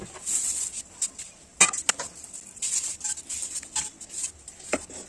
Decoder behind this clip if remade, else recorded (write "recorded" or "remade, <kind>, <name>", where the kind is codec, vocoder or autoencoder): recorded